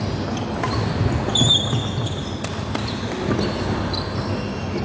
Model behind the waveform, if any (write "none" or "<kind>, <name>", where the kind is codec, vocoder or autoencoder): none